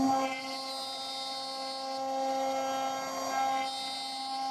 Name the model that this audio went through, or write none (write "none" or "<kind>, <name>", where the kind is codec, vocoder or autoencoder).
none